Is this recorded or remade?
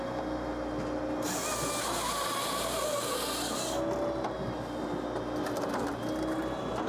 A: recorded